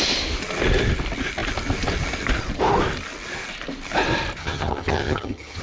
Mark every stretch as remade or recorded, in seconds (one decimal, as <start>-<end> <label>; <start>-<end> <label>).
0.0-4.4 recorded; 4.4-5.6 remade